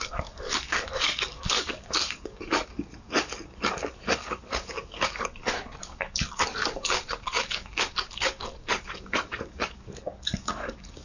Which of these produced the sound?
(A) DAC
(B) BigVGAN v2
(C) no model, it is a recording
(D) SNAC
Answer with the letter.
A